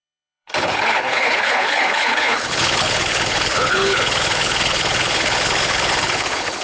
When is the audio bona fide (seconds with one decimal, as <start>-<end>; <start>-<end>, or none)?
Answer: none